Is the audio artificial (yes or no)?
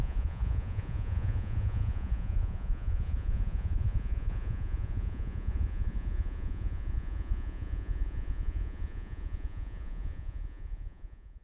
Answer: yes